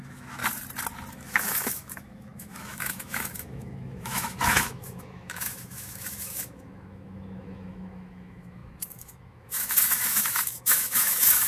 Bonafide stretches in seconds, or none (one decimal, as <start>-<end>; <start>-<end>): 0.4-1.1